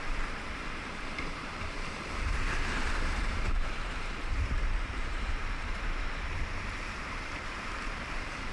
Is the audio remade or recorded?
remade